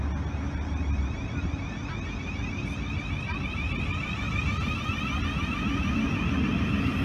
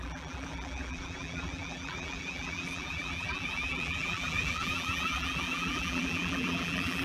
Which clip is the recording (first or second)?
first